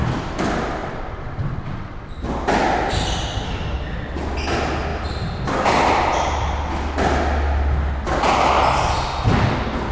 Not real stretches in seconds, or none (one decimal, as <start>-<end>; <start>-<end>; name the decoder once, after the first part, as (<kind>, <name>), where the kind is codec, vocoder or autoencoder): 0.8-2.2 (vocoder, WaveNeXt)